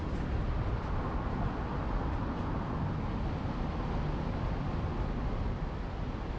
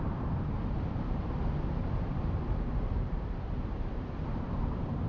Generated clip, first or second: second